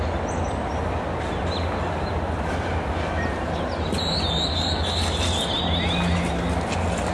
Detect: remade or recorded recorded